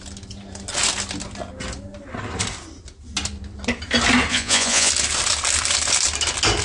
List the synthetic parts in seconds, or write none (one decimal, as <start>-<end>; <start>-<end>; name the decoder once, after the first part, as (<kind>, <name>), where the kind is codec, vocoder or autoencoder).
4.3-4.9 (vocoder, Vocos)

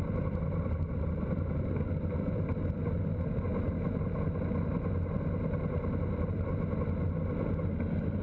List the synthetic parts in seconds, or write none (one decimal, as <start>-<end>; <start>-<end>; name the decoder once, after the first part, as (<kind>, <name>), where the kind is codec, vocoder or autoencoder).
none

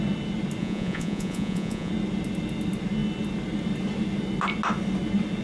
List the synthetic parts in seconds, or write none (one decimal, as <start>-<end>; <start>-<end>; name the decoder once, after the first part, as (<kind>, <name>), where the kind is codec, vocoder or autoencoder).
0.6-1.9 (vocoder, Vocos)

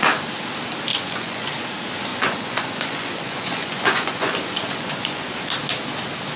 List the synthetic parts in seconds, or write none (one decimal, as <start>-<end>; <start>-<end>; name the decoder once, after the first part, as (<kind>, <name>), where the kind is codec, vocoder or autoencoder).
0.9-1.5 (vocoder, Vocos); 2.1-5.2

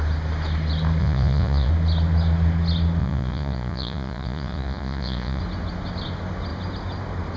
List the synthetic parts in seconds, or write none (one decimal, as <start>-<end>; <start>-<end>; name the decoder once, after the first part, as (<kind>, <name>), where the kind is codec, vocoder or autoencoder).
1.0-1.7 (vocoder, Vocos); 3.0-5.4

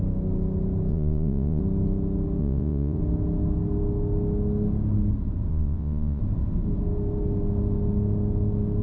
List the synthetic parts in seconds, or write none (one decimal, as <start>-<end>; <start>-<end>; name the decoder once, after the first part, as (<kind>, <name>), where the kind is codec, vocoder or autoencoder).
0.9-1.6 (vocoder, Vocos); 2.4-3.0; 5.5-6.2

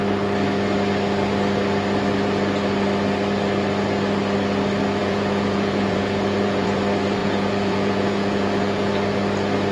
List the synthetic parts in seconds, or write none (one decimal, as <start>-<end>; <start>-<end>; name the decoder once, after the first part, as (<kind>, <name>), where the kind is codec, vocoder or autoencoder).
5.0-6.8 (vocoder, Vocos); 7.2-8.9

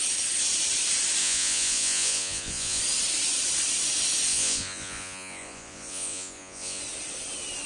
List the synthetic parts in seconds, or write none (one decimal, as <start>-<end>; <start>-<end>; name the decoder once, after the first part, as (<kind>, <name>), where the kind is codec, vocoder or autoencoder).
1.2-2.8 (vocoder, Vocos); 4.3-6.8